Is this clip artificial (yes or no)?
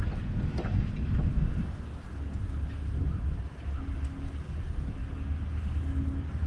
no